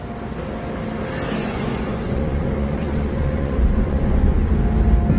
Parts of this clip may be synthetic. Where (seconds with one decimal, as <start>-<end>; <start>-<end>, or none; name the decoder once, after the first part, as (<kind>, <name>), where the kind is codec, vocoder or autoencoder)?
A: 1.4-4.5 (vocoder, Vocos)